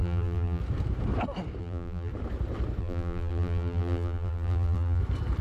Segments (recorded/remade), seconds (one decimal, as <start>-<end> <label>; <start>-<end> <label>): 0.0-0.6 remade; 0.6-1.6 recorded; 1.6-2.1 remade; 2.1-2.8 recorded; 2.8-5.0 remade; 5.0-5.4 recorded

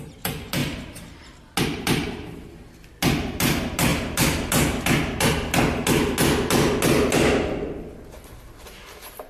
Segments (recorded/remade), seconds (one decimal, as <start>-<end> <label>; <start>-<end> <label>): 0.0-9.3 recorded

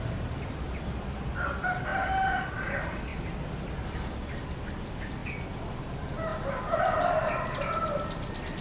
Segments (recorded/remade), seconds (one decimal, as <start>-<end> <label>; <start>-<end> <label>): 0.0-8.6 recorded

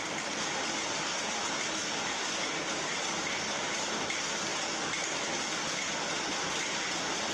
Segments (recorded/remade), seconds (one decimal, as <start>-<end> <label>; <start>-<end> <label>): 0.0-7.3 recorded

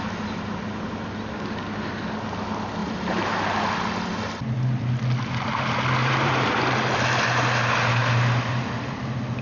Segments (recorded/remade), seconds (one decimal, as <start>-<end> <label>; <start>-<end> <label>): 0.0-2.8 recorded; 2.8-3.6 remade; 3.6-6.0 recorded; 6.0-6.6 remade; 6.6-9.4 recorded

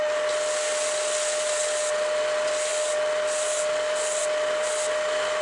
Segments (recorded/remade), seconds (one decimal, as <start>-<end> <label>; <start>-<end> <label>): 0.0-5.4 recorded

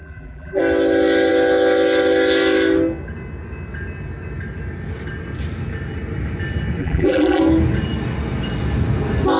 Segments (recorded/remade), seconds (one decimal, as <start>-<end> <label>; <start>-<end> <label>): 0.0-0.6 remade; 0.6-6.8 recorded; 6.8-7.4 remade; 7.4-9.4 recorded